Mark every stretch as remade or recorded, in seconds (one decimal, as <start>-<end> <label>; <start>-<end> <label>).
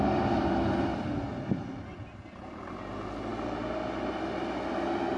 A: 0.0-5.2 recorded